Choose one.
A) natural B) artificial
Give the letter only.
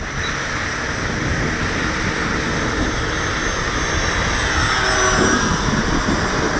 A